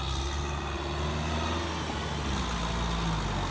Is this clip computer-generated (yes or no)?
no